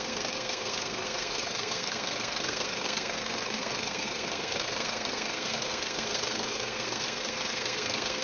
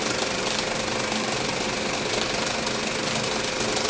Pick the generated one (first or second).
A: first